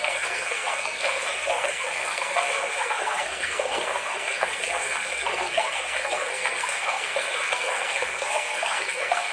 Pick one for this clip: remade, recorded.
remade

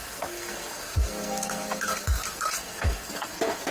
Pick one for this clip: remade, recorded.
remade